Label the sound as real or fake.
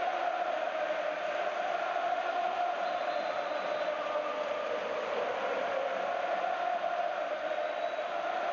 real